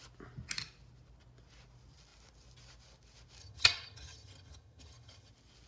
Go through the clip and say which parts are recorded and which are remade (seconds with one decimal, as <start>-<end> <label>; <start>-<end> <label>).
0.0-3.4 recorded; 3.4-5.3 remade; 5.3-5.7 recorded